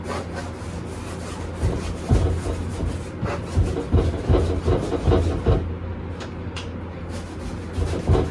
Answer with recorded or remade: recorded